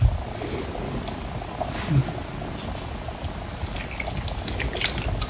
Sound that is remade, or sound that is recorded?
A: recorded